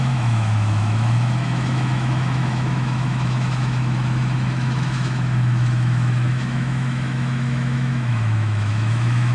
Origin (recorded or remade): remade